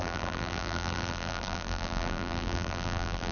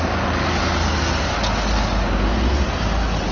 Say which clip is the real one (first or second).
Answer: second